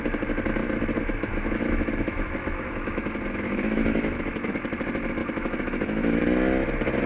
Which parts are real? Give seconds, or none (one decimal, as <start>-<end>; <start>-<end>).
0.0-1.3; 4.5-5.2; 6.2-7.1